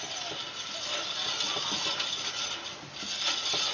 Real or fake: real